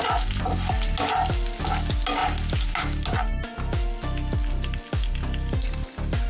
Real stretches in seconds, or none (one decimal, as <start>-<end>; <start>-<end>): 0.0-6.3